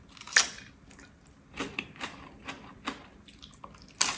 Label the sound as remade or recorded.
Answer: recorded